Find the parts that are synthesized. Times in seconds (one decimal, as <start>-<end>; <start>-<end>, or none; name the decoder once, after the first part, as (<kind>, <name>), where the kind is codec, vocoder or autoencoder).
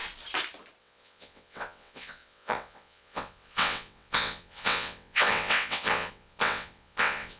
0.8-7.4 (vocoder, WaveNeXt)